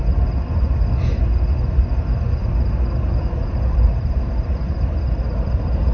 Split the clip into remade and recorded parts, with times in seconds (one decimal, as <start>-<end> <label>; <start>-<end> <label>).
0.0-5.9 recorded